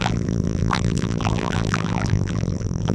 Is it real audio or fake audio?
fake